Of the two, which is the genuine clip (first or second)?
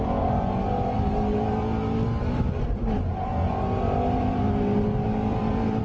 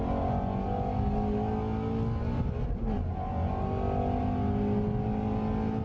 second